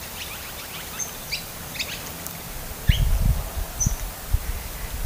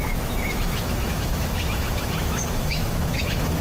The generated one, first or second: second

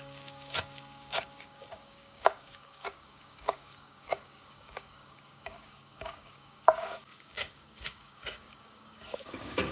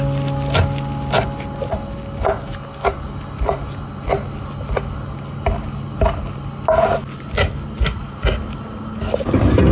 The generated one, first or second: first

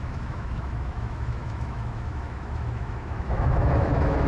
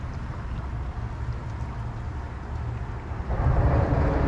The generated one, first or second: first